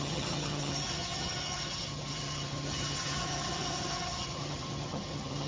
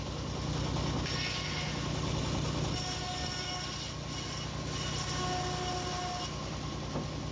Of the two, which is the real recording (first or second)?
second